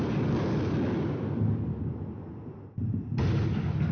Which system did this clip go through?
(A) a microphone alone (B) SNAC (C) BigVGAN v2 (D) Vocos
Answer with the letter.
A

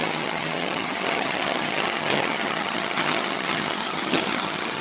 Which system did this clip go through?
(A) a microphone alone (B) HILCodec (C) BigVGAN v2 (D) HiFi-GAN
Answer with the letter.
D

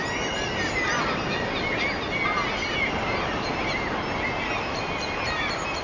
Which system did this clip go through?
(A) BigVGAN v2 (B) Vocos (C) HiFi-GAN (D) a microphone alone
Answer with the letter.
D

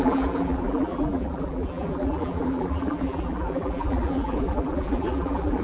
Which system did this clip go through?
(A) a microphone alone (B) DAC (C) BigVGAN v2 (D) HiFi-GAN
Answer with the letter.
C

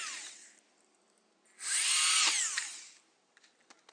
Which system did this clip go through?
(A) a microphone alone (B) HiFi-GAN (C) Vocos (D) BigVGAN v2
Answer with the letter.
A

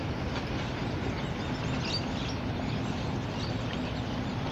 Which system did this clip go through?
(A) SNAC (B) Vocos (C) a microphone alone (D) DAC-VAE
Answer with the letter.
C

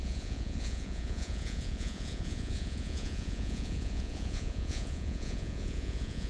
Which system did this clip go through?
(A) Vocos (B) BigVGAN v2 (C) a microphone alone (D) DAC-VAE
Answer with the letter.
A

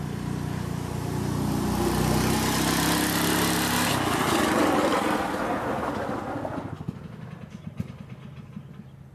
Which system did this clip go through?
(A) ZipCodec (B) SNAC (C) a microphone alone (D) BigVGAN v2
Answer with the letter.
C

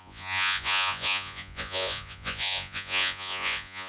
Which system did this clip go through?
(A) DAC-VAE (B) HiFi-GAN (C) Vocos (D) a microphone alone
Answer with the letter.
C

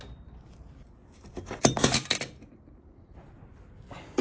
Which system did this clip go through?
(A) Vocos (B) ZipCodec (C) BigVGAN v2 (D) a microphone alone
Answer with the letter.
D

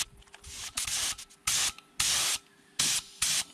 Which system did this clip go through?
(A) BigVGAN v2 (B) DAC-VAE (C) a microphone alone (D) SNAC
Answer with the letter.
C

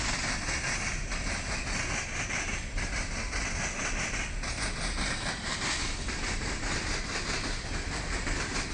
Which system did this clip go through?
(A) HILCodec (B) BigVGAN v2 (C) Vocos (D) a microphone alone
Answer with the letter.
D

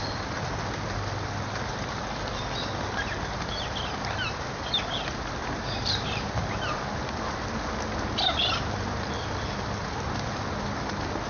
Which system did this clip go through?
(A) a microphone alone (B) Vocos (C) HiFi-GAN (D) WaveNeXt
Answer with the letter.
A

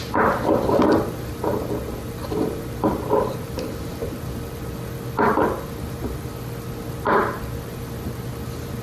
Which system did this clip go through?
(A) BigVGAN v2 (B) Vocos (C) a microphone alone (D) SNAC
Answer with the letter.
C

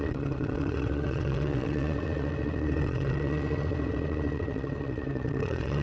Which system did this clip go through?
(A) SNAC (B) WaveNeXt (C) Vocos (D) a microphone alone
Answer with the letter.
B